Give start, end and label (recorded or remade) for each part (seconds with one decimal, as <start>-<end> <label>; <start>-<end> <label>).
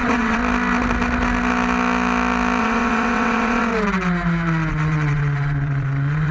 0.0-0.4 remade; 0.4-2.6 recorded; 2.6-3.7 remade; 3.7-4.7 recorded; 4.7-6.3 remade